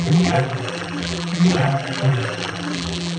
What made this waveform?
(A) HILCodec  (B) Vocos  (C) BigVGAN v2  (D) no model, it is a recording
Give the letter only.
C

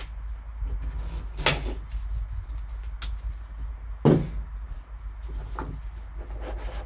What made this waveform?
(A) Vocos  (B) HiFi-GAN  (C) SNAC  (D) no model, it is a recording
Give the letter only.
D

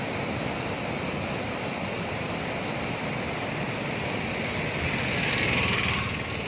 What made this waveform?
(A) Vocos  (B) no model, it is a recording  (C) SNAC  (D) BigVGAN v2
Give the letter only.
B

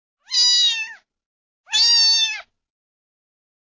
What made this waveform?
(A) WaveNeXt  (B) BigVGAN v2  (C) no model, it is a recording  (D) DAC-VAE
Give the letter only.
C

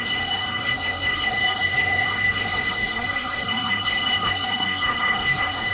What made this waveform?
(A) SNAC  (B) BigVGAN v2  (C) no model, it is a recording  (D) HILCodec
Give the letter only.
A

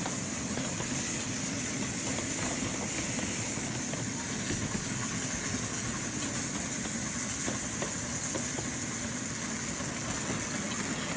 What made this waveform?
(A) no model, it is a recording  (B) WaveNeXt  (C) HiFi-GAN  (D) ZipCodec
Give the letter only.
A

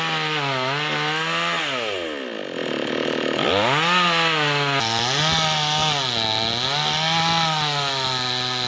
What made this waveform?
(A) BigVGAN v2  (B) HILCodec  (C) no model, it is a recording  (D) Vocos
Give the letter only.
C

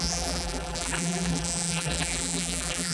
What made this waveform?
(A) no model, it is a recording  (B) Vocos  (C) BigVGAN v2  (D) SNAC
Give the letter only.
C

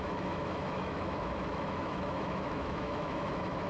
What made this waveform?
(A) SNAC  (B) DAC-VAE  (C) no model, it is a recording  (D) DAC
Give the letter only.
B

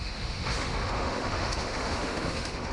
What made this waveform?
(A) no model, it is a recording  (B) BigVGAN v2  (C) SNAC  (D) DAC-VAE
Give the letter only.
D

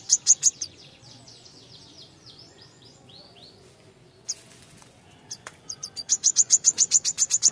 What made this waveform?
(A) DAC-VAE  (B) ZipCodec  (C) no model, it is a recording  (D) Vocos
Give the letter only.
D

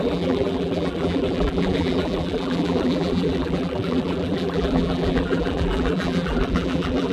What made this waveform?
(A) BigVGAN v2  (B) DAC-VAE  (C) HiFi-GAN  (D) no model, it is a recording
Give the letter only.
A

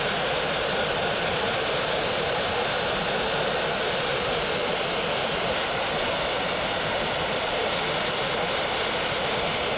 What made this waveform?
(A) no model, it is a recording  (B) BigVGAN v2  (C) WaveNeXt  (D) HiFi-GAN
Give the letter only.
A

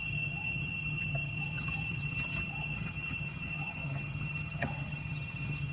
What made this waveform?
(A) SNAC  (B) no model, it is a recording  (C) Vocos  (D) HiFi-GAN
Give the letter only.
D